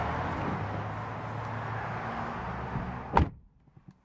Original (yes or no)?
yes